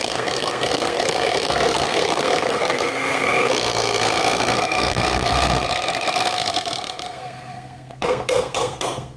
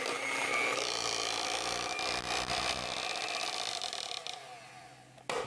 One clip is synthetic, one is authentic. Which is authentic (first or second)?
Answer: second